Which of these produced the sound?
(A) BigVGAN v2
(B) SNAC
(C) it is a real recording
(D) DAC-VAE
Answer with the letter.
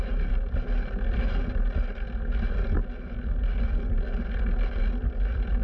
C